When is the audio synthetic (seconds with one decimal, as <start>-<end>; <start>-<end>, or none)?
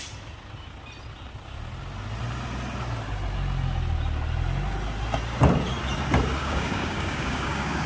6.4-7.9